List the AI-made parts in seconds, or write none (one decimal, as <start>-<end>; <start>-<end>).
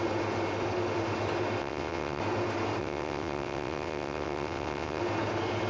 1.6-2.2; 2.8-5.0